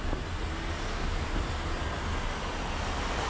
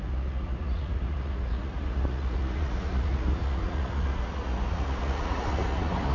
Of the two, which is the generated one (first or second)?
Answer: second